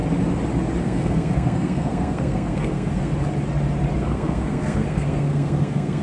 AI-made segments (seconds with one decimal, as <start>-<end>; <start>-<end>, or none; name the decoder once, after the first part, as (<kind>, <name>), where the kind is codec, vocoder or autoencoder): 0.8-3.1 (codec, SNAC); 4.0-6.0